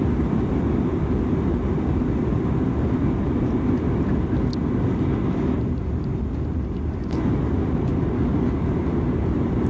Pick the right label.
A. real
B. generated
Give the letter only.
A